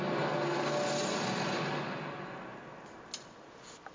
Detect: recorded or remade recorded